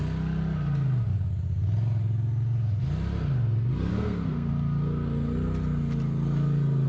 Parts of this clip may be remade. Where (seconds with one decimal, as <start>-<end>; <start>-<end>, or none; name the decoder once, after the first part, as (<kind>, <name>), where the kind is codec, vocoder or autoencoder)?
3.9-4.5 (codec, SNAC)